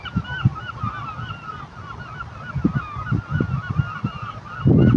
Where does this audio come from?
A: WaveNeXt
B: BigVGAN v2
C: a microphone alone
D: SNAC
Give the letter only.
C